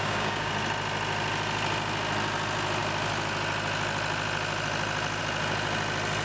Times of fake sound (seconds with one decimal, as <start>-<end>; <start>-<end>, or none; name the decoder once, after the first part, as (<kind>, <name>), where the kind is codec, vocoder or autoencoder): 0.0-0.5 (codec, DAC)